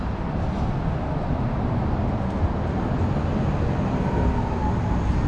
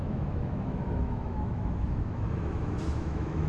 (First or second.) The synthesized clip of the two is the second